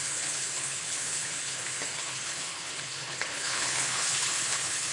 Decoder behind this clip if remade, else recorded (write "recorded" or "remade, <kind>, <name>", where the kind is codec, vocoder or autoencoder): remade, codec, HILCodec